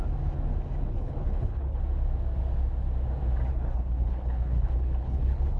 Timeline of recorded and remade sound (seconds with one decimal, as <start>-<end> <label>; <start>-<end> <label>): 0.0-0.9 recorded; 0.9-1.8 remade; 1.8-3.5 recorded; 3.5-5.6 remade

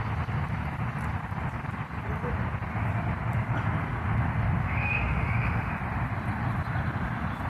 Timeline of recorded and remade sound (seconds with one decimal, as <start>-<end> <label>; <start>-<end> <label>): 0.0-4.6 recorded; 4.6-5.7 remade; 5.7-7.5 recorded

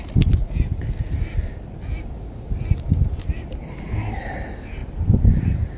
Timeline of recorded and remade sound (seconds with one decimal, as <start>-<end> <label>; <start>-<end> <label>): 0.0-5.8 recorded

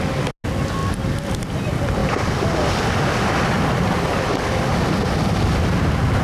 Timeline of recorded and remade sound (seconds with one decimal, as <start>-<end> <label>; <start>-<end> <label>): 0.0-6.2 recorded